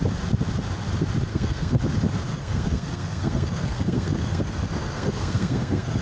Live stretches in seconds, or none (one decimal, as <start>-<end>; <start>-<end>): 0.0-1.3; 1.8-2.3